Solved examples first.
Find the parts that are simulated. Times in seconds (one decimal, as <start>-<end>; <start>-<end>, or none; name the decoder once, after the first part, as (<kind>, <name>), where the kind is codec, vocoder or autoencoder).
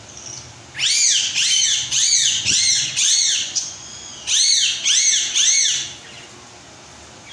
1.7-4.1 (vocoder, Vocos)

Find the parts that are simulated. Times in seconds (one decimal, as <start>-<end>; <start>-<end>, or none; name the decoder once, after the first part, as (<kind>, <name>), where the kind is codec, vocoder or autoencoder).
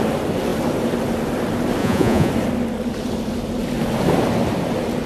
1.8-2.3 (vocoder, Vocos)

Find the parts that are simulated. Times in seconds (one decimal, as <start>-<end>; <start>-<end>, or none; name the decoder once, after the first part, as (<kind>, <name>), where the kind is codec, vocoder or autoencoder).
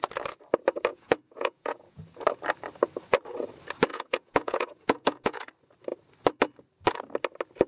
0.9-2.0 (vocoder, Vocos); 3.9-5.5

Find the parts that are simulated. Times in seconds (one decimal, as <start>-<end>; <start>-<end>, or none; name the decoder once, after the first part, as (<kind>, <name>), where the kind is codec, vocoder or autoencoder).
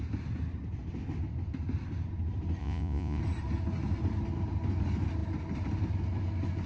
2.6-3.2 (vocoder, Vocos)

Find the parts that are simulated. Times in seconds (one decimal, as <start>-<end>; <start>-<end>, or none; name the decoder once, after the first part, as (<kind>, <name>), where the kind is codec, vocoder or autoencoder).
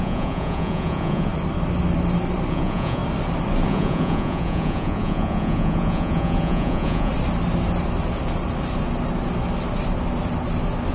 0.0-1.3 (vocoder, Vocos); 2.5-3.0; 3.7-7.1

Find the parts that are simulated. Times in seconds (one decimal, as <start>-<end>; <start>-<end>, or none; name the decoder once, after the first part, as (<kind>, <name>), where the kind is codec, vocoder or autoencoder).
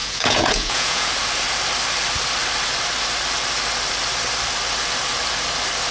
0.0-1.1 (vocoder, Vocos)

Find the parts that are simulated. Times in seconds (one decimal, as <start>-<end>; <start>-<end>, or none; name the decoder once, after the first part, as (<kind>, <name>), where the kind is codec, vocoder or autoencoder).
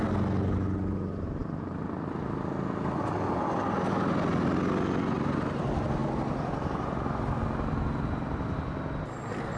none